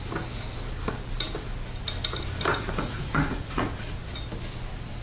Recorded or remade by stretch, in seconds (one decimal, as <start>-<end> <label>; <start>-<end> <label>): 0.0-2.5 recorded; 2.5-3.9 remade; 3.9-5.0 recorded